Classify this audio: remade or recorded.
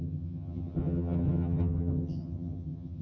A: remade